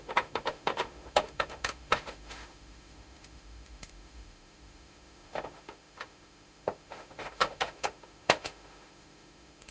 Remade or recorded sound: remade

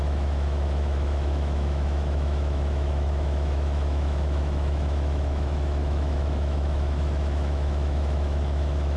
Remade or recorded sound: remade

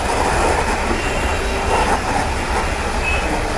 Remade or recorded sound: recorded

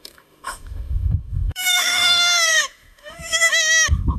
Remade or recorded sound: remade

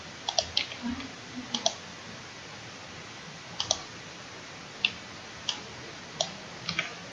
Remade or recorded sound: recorded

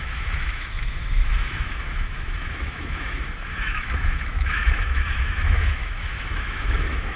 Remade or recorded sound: remade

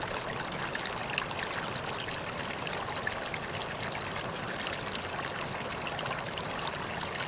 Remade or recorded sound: recorded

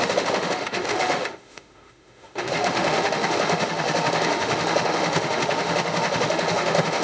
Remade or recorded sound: remade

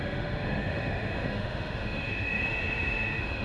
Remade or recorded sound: remade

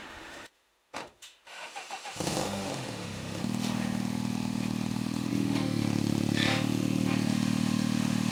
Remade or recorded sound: remade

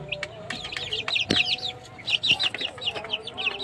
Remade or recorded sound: recorded